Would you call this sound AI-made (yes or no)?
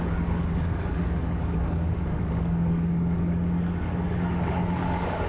yes